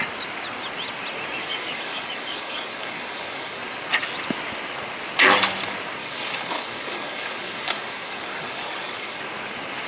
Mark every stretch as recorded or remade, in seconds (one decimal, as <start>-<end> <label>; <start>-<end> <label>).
0.0-1.4 recorded; 1.4-3.6 remade; 3.6-6.0 recorded; 6.0-9.2 remade; 9.2-9.9 recorded

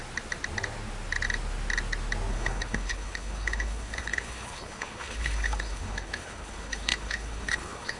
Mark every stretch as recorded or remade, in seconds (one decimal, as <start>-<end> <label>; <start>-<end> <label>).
0.0-2.3 recorded; 2.3-8.0 remade